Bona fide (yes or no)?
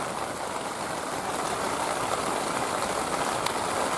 yes